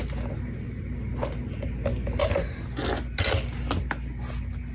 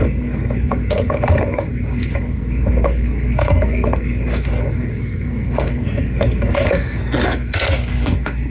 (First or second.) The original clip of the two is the first